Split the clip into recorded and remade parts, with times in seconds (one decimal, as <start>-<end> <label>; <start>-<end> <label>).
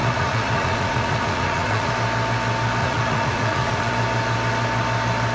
0.0-1.9 remade; 1.9-2.8 recorded; 2.8-3.9 remade; 3.9-5.3 recorded